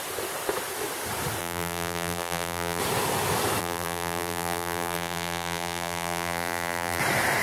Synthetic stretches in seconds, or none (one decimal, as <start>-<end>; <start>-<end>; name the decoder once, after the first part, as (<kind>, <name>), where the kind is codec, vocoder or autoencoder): 1.4-2.8 (vocoder, BigVGAN v2); 3.6-7.0

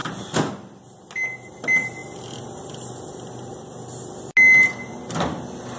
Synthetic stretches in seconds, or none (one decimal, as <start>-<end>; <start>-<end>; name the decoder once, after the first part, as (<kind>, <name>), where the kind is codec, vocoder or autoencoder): 0.0-0.5 (vocoder, BigVGAN v2)

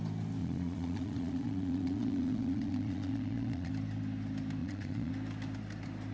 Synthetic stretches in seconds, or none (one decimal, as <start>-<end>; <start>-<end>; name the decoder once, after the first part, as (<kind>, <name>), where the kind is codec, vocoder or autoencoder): 0.4-3.7 (vocoder, Vocos); 4.6-5.1

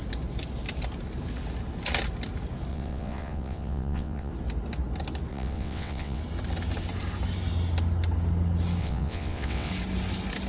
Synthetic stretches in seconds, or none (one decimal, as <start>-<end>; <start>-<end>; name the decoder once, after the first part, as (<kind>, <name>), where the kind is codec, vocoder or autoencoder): 2.7-4.3 (vocoder, WaveNeXt); 5.3-6.2; 8.8-9.7